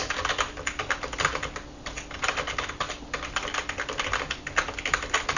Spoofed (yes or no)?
no